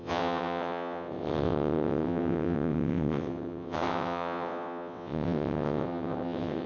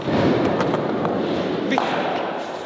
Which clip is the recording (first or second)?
second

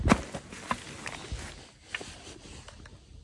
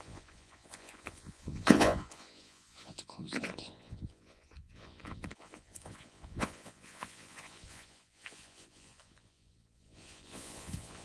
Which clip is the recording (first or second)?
first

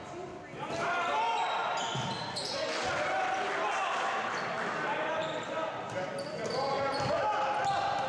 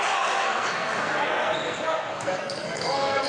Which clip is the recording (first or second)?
first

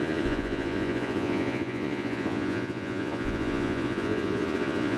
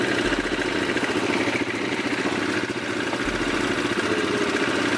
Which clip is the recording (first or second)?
second